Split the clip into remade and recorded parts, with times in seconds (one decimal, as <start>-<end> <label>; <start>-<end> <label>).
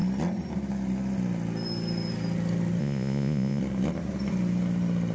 0.0-2.8 recorded; 2.8-3.6 remade; 3.6-5.1 recorded